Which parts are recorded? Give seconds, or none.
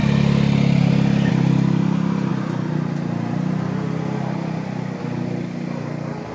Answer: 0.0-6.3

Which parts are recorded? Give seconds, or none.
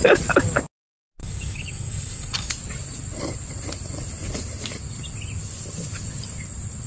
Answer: 0.0-1.2; 2.5-6.9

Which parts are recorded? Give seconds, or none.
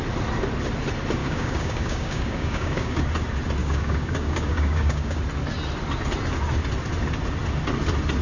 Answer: 0.0-1.2; 3.0-3.6; 5.2-8.2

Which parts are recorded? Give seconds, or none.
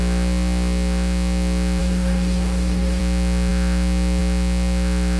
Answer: 0.0-1.8; 3.0-5.2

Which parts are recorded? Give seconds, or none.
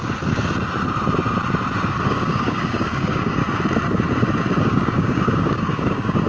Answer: 0.0-2.1; 3.4-4.6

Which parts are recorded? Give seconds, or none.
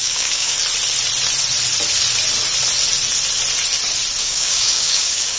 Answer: 0.6-4.2